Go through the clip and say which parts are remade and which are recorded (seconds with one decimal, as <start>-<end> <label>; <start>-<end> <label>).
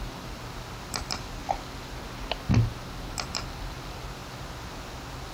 0.0-5.3 recorded